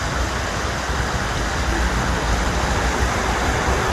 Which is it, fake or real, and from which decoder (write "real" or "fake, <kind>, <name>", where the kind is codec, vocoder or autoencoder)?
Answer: real